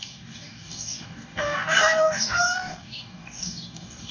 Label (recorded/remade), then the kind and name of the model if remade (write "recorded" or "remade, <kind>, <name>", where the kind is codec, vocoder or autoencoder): remade, codec, DAC